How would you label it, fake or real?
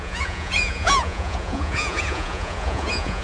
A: fake